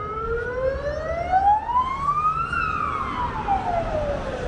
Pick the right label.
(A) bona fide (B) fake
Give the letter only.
A